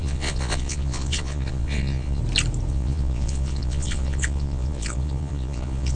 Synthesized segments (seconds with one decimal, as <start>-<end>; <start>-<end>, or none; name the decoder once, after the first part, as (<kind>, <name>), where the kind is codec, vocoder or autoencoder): 0.0-2.2 (vocoder, Vocos); 2.7-6.0